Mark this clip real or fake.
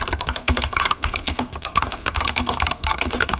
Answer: fake